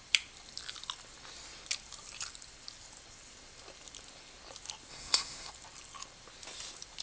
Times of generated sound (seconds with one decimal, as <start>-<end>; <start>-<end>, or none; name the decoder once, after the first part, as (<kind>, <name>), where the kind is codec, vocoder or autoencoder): 4.9-5.5 (codec, SNAC)

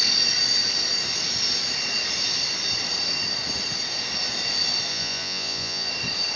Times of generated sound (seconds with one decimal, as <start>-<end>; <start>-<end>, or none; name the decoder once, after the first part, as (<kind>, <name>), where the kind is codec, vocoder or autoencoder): 4.9-5.9 (vocoder, Vocos)

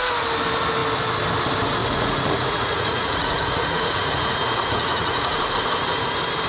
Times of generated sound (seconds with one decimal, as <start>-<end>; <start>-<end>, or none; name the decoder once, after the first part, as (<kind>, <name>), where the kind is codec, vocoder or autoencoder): 1.8-5.5 (vocoder, Vocos)

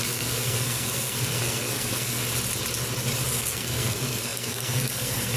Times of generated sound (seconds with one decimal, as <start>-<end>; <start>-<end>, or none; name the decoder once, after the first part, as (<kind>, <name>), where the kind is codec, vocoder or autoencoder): 0.0-2.2 (codec, SNAC); 3.4-5.4

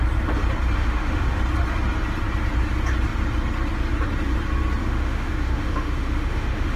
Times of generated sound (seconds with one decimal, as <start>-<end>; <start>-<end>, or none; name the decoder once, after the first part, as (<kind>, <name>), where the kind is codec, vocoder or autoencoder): 0.8-1.4 (autoencoder, DAC-VAE); 4.8-6.8

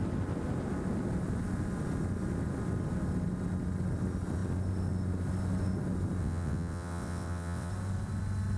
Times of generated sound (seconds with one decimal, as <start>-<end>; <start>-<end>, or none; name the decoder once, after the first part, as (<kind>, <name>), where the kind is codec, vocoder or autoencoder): 6.2-7.7 (vocoder, WaveNeXt)

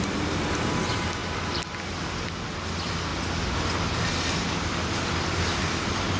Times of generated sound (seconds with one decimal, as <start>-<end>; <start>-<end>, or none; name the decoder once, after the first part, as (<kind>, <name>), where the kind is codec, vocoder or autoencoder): 1.2-1.7 (vocoder, BigVGAN v2)